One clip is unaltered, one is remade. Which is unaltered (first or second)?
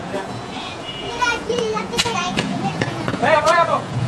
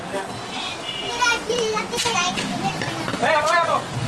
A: second